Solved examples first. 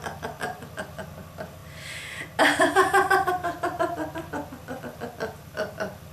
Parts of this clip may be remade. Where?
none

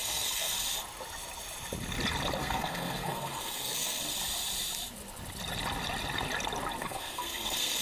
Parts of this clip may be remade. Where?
0.0-0.5 (codec, SNAC); 2.4-4.0; 6.8-7.8

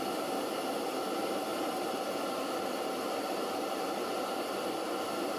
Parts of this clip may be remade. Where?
1.5-4.7 (vocoder, BigVGAN v2)

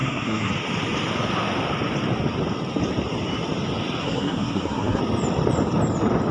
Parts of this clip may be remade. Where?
0.0-0.5 (codec, SNAC); 4.0-5.0